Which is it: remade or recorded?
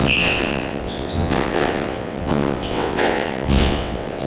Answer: remade